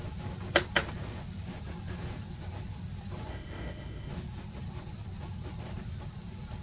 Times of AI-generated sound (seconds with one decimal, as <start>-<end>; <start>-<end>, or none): 3.3-4.1